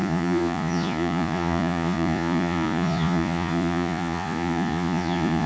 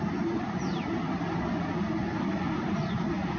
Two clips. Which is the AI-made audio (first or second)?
first